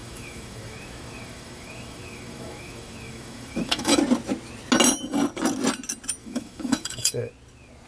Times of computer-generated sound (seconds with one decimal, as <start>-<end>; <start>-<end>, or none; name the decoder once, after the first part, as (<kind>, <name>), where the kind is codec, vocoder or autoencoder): 0.0-4.0 (autoencoder, DAC-VAE); 6.2-7.3